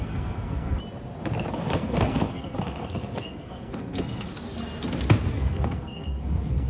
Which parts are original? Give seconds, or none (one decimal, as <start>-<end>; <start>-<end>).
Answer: 0.8-1.5; 4.3-5.3